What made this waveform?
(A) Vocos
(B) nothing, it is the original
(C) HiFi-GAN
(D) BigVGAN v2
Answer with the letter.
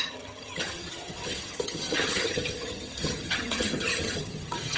C